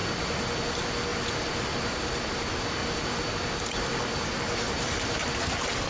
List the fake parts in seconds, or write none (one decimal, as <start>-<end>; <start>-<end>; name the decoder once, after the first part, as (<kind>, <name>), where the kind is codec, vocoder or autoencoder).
0.0-2.8 (vocoder, BigVGAN v2); 3.3-5.9